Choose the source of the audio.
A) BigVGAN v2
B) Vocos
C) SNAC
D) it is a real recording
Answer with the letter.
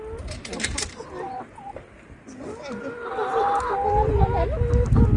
D